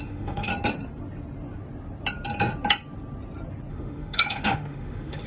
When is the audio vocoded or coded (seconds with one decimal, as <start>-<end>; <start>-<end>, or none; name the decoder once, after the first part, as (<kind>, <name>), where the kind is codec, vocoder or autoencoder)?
0.0-0.5 (autoencoder, DAC-VAE); 3.7-5.3